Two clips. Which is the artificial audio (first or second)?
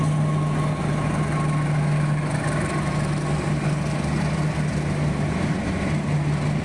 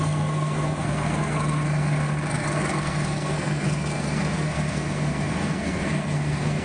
second